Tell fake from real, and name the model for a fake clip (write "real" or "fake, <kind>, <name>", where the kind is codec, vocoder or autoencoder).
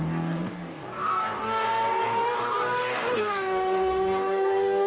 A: fake, codec, DAC